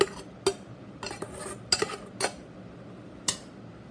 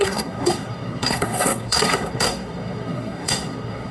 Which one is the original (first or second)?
first